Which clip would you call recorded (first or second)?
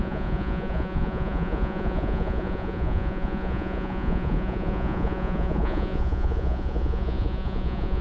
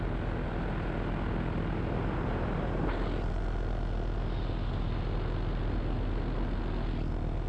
second